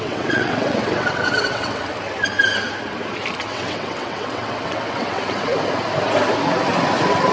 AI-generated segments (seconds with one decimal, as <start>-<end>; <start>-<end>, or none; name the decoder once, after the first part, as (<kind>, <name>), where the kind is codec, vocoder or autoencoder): 0.0-1.9 (vocoder, WaveNeXt); 3.4-5.5